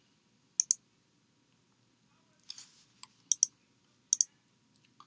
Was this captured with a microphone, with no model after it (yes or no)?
yes